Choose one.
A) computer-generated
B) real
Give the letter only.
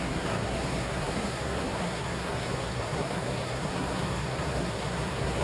A